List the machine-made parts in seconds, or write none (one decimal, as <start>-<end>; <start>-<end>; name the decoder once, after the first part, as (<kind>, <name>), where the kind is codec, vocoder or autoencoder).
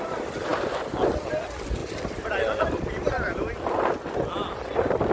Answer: none